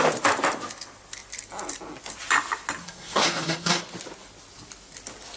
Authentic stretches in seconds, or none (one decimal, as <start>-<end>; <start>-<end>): 0.0-2.8; 3.8-5.4